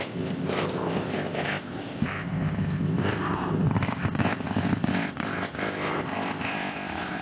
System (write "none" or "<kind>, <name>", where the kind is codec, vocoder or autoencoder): codec, ZipCodec